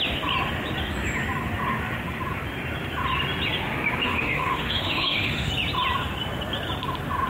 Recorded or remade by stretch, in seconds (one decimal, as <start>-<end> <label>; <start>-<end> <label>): 0.0-4.0 recorded; 4.0-5.5 remade; 5.5-7.3 recorded